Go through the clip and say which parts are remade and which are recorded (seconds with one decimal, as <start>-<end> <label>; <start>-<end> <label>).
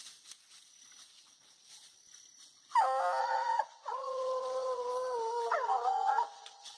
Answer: 0.0-3.2 recorded; 3.2-4.9 remade; 4.9-5.5 recorded; 5.5-6.8 remade